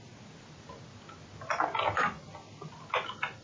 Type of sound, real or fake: real